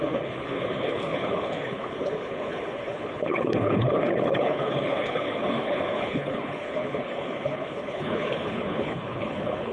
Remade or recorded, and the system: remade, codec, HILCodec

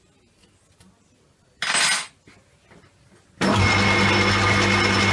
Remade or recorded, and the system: recorded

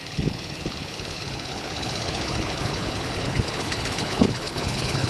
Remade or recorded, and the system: remade, codec, HILCodec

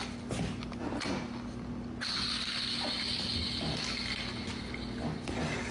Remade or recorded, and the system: recorded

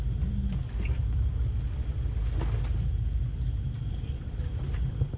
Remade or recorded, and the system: recorded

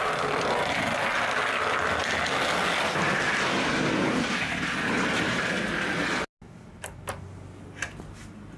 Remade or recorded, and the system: recorded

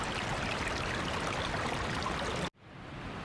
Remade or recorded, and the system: recorded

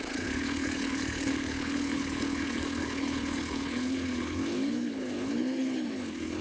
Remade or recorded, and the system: remade, codec, HILCodec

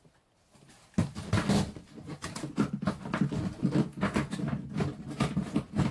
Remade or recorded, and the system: recorded